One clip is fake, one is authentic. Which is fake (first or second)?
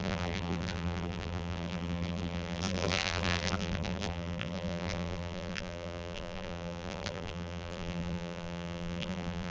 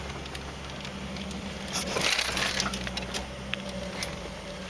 first